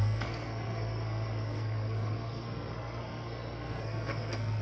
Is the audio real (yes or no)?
no